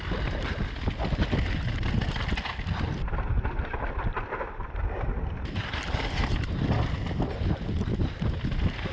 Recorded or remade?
recorded